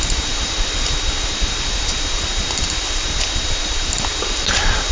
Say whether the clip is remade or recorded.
remade